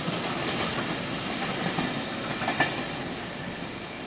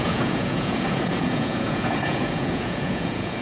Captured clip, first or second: first